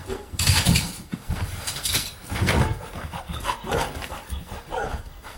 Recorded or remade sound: remade